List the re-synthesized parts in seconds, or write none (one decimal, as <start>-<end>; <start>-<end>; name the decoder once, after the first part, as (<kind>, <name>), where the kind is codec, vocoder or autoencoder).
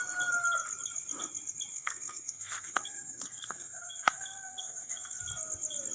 1.7-5.2 (codec, SNAC)